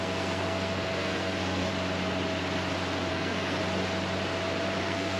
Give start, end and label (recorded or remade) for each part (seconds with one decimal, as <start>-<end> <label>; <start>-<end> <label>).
0.0-1.7 remade; 1.7-3.1 recorded; 3.1-3.6 remade; 3.6-4.8 recorded; 4.8-5.2 remade